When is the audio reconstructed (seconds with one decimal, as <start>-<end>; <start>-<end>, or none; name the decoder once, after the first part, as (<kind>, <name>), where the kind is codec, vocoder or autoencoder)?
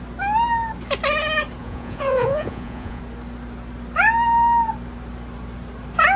1.6-3.0 (vocoder, Vocos)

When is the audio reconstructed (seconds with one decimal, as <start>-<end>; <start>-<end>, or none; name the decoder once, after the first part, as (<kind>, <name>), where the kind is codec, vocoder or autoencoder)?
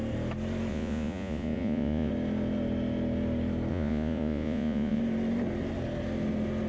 0.7-2.1 (vocoder, Vocos); 3.7-5.0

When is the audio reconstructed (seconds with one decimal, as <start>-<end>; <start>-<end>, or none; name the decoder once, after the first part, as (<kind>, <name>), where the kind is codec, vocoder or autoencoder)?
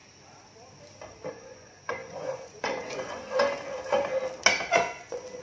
1.3-3.2 (vocoder, Vocos); 4.7-5.4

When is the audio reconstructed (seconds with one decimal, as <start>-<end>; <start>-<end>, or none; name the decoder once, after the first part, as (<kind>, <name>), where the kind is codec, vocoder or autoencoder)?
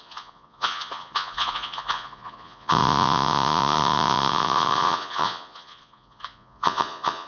0.0-7.3 (vocoder, Vocos)